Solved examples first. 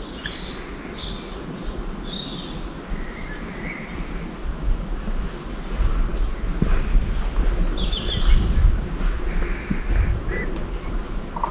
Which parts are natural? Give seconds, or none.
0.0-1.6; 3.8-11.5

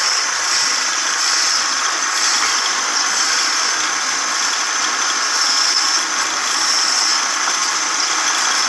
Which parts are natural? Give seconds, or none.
0.0-8.7

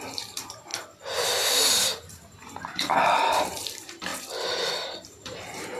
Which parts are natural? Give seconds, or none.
0.7-1.7; 4.1-4.7